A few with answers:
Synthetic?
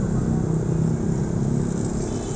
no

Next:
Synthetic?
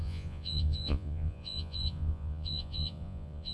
yes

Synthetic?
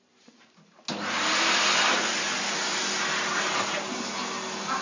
no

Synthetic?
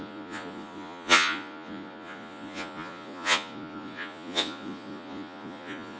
yes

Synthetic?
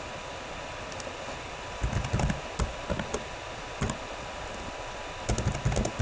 no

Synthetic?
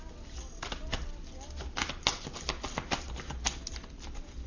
no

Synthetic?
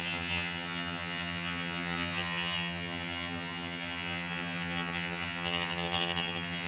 yes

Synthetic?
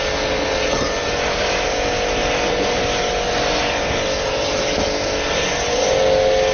no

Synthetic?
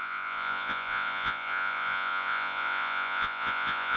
yes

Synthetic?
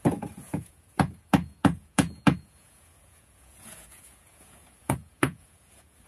yes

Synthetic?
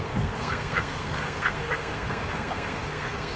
yes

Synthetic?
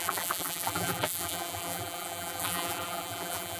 yes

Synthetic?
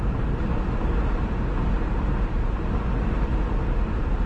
no